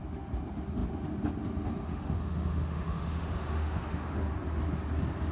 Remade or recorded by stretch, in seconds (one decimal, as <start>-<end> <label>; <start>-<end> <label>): 0.0-1.9 recorded; 1.9-4.3 remade; 4.3-5.3 recorded